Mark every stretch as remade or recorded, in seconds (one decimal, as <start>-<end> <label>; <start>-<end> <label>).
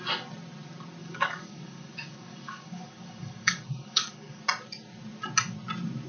0.0-1.0 recorded; 1.0-4.4 remade; 4.4-6.1 recorded